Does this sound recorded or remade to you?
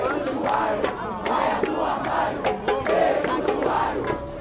recorded